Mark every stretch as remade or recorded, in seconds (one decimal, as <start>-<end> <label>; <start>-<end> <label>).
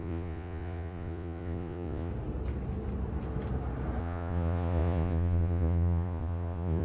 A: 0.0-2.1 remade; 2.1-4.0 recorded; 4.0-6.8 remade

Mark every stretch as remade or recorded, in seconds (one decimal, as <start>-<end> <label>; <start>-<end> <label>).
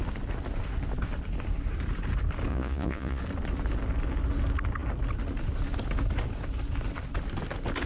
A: 0.0-2.5 recorded; 2.5-3.2 remade; 3.2-7.9 recorded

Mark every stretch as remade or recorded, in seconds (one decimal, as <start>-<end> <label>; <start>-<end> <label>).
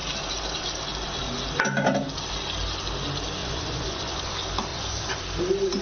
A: 0.0-3.4 recorded; 3.4-4.3 remade; 4.3-4.7 recorded; 4.7-5.2 remade; 5.2-5.8 recorded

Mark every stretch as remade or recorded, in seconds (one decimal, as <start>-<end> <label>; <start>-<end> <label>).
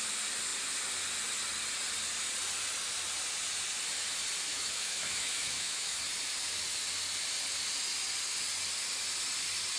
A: 0.0-4.5 recorded; 4.5-6.0 remade; 6.0-9.8 recorded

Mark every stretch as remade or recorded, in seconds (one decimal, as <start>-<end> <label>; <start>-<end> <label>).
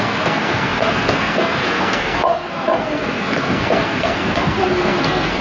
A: 0.0-5.4 remade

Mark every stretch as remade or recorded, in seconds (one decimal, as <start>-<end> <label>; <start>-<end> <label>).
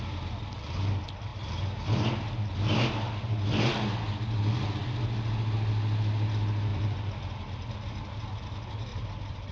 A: 0.0-6.7 recorded; 6.7-7.7 remade; 7.7-8.9 recorded; 8.9-9.5 remade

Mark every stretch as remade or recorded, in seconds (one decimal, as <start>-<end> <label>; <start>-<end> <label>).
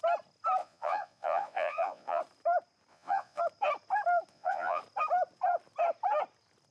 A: 0.0-0.6 recorded; 0.6-2.2 remade; 2.2-2.9 recorded; 2.9-3.4 remade; 3.4-4.3 recorded; 4.3-4.8 remade; 4.8-6.7 recorded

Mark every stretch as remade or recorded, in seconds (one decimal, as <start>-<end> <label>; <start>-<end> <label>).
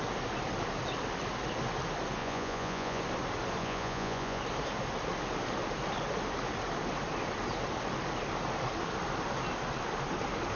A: 0.0-2.2 recorded; 2.2-3.0 remade; 3.0-3.6 recorded; 3.6-4.4 remade; 4.4-10.6 recorded